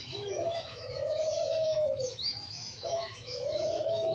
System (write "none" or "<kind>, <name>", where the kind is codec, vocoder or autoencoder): autoencoder, DAC-VAE